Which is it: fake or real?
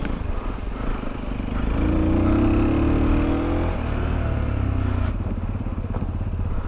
real